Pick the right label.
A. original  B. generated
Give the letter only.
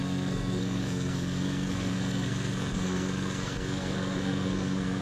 B